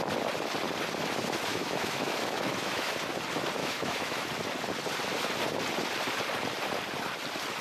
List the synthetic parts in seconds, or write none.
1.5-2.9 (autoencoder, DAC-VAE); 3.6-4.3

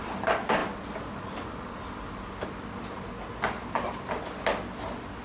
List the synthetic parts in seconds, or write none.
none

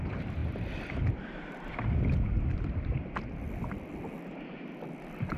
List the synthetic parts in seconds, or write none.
none